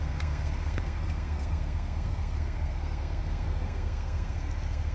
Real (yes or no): no